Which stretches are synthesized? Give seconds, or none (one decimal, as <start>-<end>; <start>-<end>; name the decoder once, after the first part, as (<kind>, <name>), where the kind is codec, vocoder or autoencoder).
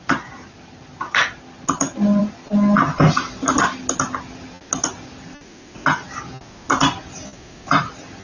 none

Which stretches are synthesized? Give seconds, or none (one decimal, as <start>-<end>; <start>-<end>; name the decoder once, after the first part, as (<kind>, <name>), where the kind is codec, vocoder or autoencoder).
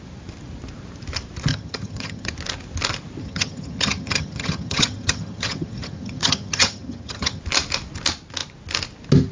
1.5-2.3 (vocoder, HiFi-GAN); 3.2-7.4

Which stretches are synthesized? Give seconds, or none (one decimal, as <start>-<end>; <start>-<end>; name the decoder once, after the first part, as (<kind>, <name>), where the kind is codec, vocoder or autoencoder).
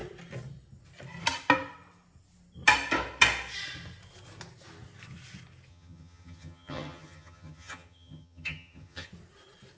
5.7-9.1 (vocoder, HiFi-GAN)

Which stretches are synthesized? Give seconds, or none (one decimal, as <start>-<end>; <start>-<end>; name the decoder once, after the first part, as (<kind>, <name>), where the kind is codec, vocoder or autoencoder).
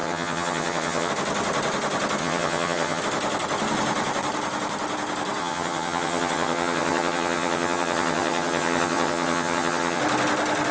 0.0-1.1 (vocoder, HiFi-GAN); 2.2-3.0; 5.4-10.0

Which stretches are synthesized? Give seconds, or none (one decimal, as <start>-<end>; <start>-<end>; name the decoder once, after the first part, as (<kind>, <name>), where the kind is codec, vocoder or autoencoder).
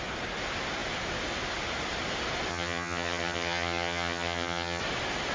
2.5-4.8 (vocoder, HiFi-GAN)